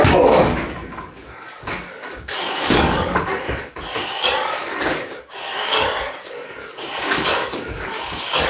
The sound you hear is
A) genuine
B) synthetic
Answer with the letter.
B